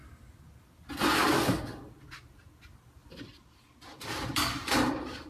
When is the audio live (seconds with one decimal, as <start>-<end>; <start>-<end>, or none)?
0.0-3.0; 4.5-5.3